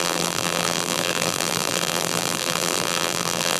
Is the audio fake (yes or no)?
yes